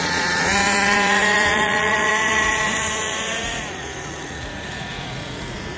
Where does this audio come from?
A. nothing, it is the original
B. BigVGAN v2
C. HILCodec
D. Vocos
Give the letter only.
D